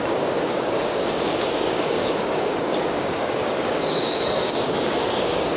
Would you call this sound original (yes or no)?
no